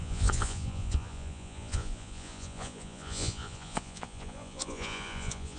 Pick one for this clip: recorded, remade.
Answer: remade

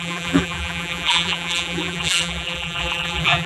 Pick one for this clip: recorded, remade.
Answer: remade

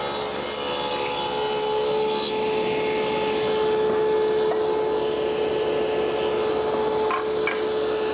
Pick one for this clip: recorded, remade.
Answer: recorded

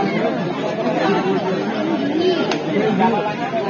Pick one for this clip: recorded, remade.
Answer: recorded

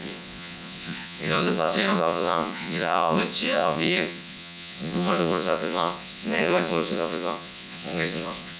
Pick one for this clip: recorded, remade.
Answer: remade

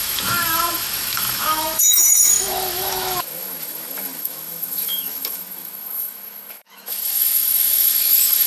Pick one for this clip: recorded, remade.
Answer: remade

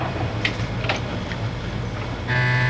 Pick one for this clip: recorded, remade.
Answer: recorded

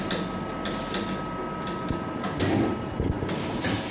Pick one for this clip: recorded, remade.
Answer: recorded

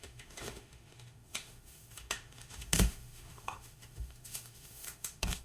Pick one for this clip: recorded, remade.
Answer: remade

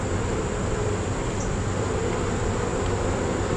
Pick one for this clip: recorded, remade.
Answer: recorded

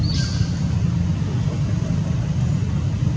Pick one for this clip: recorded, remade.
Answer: recorded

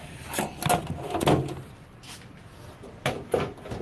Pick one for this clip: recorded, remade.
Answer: recorded